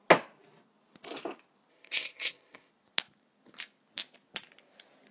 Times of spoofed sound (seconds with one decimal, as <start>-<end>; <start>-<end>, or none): 1.7-2.7